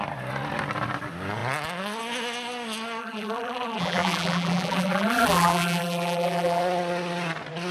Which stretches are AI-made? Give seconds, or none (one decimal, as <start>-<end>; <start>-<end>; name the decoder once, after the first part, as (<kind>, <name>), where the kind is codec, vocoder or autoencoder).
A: 3.0-6.6 (vocoder, BigVGAN v2)